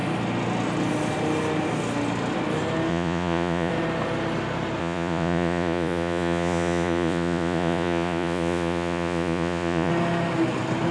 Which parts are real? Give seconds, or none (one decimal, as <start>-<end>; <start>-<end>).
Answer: 0.0-2.9; 3.7-4.8; 9.9-10.9